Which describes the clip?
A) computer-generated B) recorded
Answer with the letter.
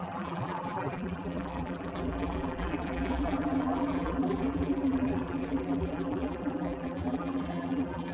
A